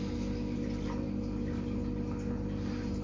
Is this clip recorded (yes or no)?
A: yes